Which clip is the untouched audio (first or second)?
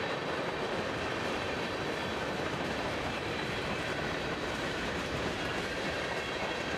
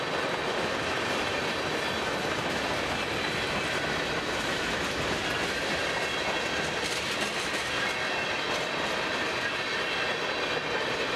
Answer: second